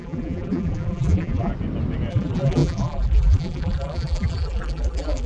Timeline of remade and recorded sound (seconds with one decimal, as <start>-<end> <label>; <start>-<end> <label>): 0.0-1.5 remade; 1.5-2.1 recorded; 2.1-5.3 remade